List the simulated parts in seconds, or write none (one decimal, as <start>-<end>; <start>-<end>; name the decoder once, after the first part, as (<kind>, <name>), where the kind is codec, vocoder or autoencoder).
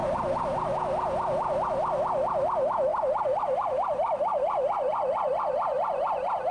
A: none